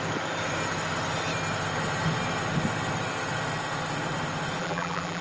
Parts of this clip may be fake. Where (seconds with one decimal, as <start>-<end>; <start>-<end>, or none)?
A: 4.6-5.2